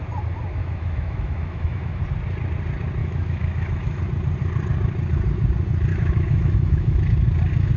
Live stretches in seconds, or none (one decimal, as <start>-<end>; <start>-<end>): 0.0-0.6; 2.0-3.0; 4.0-5.9; 7.0-7.8